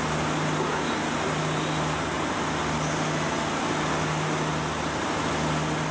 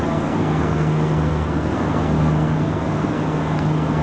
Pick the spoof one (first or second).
second